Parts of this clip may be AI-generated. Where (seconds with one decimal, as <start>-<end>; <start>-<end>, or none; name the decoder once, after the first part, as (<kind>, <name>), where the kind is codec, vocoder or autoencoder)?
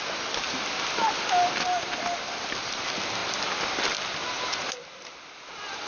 none